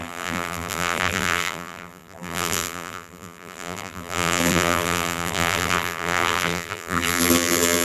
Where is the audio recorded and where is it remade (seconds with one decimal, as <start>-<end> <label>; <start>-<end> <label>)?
0.0-7.8 remade